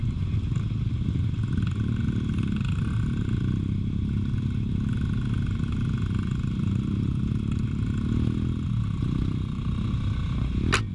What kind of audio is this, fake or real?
real